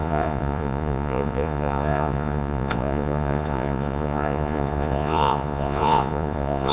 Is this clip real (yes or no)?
no